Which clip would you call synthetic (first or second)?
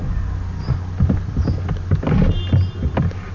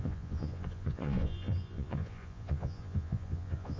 second